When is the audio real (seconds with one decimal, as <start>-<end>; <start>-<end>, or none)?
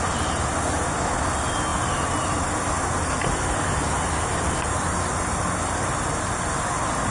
0.0-7.1